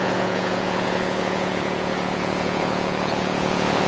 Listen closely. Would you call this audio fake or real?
fake